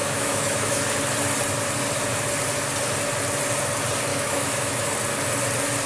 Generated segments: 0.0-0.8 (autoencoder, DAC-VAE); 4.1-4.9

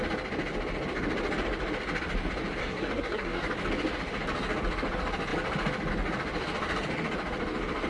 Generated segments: 2.6-3.4 (codec, SNAC)

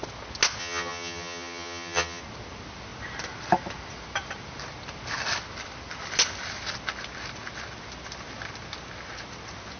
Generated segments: 0.6-2.2 (vocoder, HiFi-GAN)

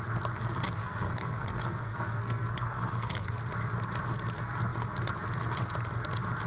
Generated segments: 0.8-3.4 (codec, SNAC)

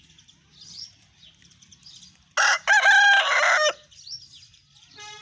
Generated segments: 0.0-1.7 (vocoder, BigVGAN v2); 4.8-5.2

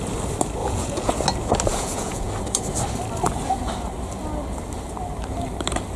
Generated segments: 0.6-1.1 (vocoder, Vocos); 1.7-2.3

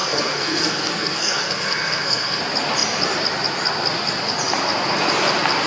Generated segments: 0.0-2.4 (codec, SNAC)